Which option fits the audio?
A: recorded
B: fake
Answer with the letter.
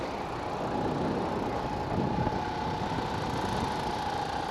A